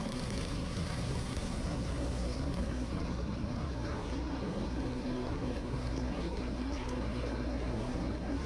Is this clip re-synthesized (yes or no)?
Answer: yes